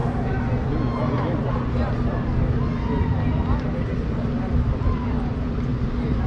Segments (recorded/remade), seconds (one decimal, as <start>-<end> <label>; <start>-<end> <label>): 0.0-3.3 recorded; 3.3-5.7 remade; 5.7-6.3 recorded